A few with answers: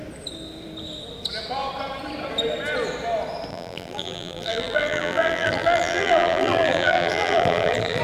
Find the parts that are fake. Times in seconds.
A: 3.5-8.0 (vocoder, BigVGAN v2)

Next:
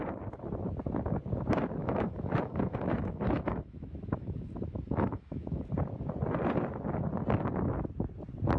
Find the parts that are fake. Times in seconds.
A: 1.8-5.7 (autoencoder, DAC-VAE)